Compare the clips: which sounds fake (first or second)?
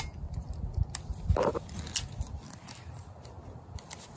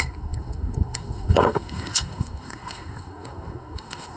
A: second